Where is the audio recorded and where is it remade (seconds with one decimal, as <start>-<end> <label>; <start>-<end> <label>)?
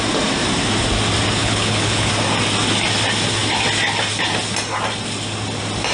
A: 0.0-1.4 recorded; 1.4-2.1 remade; 2.1-5.9 recorded